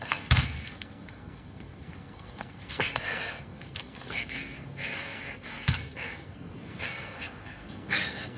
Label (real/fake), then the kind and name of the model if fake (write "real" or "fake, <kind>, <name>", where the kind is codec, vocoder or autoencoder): fake, codec, SNAC